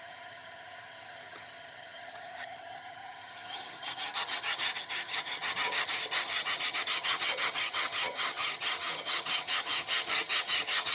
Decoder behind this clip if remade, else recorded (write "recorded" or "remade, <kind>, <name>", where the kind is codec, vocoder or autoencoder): remade, vocoder, HiFi-GAN